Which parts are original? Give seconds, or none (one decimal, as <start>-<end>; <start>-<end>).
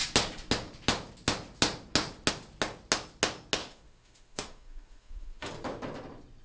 0.0-3.6; 5.5-6.4